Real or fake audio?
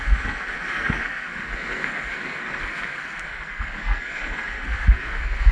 fake